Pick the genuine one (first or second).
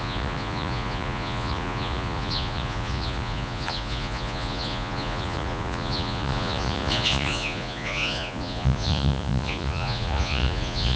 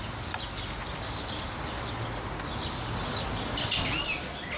second